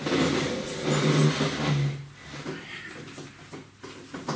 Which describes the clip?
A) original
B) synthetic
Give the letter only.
A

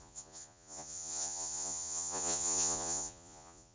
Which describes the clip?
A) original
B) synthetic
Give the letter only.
B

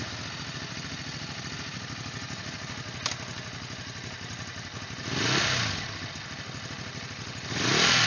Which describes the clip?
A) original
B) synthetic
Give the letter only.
A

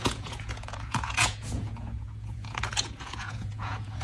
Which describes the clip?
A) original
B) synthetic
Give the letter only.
B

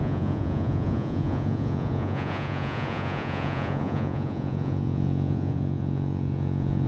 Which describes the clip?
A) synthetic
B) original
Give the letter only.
A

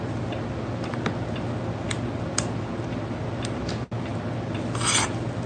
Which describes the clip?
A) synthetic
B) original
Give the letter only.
B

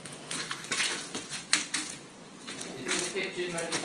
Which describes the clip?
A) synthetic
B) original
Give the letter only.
A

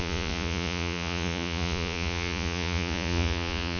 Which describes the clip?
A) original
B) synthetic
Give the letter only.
B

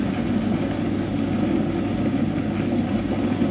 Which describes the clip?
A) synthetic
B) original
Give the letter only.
B